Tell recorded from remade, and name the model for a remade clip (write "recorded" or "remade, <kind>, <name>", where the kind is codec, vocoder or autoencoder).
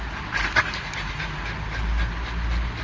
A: recorded